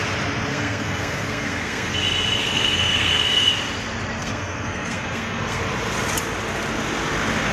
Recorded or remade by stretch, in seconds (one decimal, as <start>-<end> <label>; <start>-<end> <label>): 0.0-0.5 recorded; 0.5-1.9 remade; 1.9-2.4 recorded; 2.4-3.5 remade; 3.5-4.2 recorded; 4.2-5.6 remade; 5.6-7.5 recorded